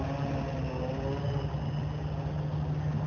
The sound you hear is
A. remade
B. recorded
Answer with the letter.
B